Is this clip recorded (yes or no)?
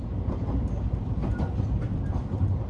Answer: yes